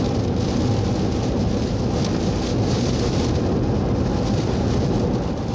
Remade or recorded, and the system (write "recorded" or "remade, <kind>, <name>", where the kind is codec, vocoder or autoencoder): recorded